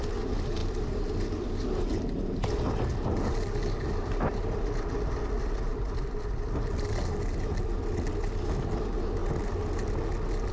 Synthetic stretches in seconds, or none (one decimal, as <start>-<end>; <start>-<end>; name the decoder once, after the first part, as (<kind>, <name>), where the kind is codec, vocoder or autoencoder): none